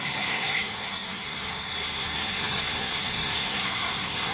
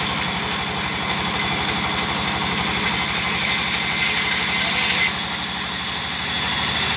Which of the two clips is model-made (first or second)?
first